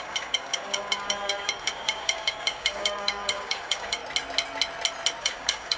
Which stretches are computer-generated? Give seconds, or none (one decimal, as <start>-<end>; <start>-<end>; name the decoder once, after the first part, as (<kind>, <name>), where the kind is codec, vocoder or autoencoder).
0.0-4.0 (codec, DAC); 5.2-5.8